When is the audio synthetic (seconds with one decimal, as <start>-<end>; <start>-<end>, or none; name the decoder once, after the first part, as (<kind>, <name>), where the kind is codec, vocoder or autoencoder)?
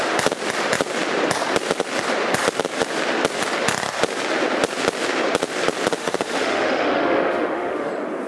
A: 6.0-7.9 (autoencoder, DAC-VAE)